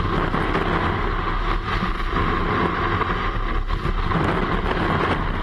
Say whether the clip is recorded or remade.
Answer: recorded